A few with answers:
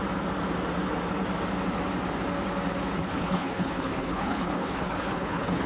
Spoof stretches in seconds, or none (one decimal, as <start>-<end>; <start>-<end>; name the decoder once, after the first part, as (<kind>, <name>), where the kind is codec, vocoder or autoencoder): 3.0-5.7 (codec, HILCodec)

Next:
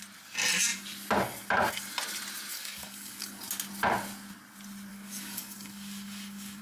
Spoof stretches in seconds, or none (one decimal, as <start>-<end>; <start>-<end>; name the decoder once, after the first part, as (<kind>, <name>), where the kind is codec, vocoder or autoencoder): 2.5-3.4 (codec, DAC); 4.9-6.6

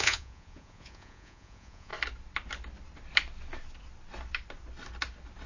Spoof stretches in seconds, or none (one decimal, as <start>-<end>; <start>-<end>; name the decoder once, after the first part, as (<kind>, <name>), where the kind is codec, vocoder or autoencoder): 0.0-1.9 (vocoder, Vocos)

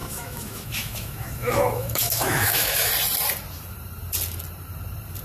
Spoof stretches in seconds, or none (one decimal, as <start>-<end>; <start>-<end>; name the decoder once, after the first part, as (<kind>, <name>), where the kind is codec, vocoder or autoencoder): 0.0-2.9 (autoencoder, DAC-VAE)